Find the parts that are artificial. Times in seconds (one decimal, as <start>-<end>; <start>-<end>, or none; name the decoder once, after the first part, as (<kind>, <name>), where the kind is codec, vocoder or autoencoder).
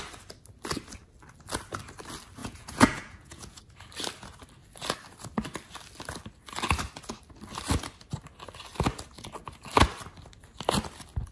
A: 2.4-3.6 (vocoder, Vocos)